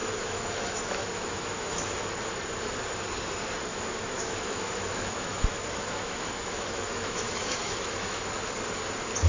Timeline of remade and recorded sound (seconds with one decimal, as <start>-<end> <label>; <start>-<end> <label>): 0.0-2.1 remade; 2.1-3.7 recorded; 3.7-8.2 remade; 8.2-9.3 recorded